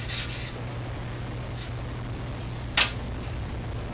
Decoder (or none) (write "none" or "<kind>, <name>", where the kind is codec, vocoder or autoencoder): none